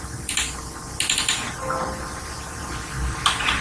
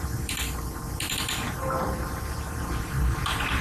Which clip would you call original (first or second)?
first